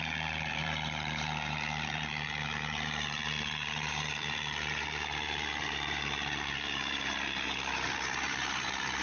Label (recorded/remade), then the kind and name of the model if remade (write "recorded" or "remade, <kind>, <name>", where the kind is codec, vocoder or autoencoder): remade, vocoder, BigVGAN v2